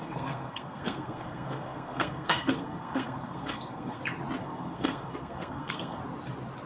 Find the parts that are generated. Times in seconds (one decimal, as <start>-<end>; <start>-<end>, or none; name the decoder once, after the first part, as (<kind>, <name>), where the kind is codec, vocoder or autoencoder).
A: 0.0-4.0 (codec, SNAC); 4.4-6.0